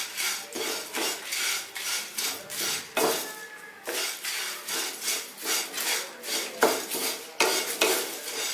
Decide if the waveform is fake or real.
real